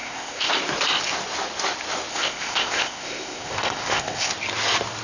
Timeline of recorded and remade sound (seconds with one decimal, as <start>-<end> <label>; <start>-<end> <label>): 0.0-0.5 remade; 0.5-2.1 recorded; 2.1-4.3 remade; 4.3-5.0 recorded